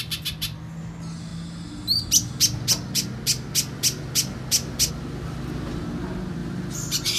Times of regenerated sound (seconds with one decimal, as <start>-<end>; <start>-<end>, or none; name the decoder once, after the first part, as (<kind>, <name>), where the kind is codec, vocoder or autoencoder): none